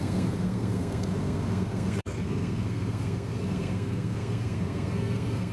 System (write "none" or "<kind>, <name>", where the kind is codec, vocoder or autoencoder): codec, SNAC